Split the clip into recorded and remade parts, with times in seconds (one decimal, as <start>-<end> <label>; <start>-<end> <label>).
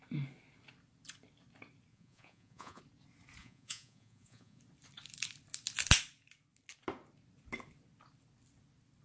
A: 0.0-1.9 recorded; 1.9-2.8 remade; 2.8-3.4 recorded; 3.4-4.6 remade; 4.6-9.0 recorded